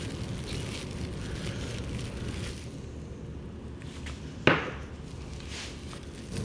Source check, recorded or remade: recorded